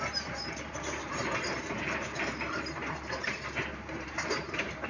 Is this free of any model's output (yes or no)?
no